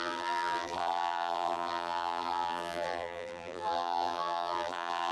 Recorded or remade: remade